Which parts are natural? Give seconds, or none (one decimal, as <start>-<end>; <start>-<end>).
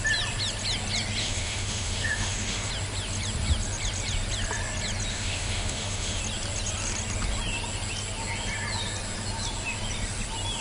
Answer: 0.0-1.2; 2.7-5.1; 6.2-10.6